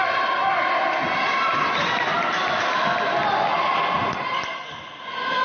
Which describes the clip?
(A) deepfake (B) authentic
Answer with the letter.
B